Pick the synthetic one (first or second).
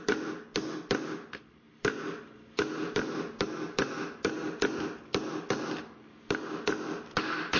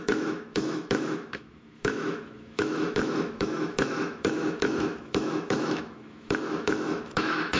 second